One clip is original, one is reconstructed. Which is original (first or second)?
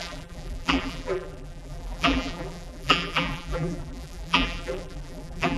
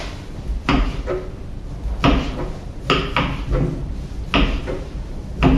second